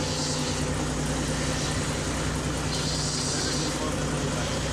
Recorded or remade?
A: recorded